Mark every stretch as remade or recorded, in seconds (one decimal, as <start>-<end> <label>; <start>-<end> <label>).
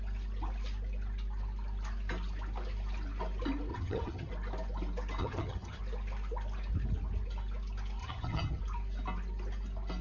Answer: 0.0-3.7 recorded; 3.7-4.3 remade; 4.3-5.2 recorded; 5.2-5.8 remade; 5.8-8.0 recorded; 8.0-8.6 remade; 8.6-10.0 recorded